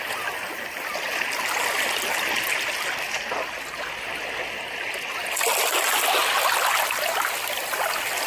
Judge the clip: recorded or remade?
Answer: recorded